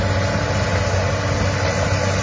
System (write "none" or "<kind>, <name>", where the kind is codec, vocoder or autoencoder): none